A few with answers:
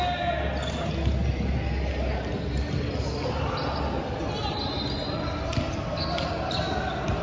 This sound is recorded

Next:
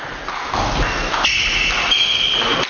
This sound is recorded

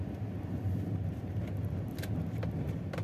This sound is recorded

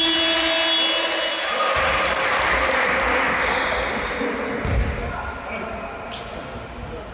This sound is recorded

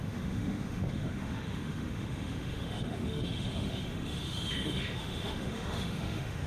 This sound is remade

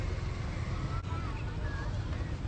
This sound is recorded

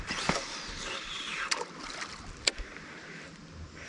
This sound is remade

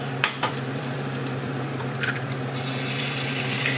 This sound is remade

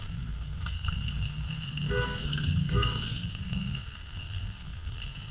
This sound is remade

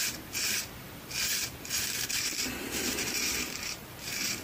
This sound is remade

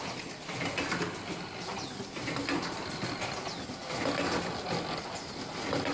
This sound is recorded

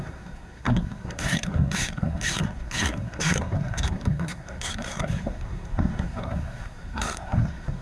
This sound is remade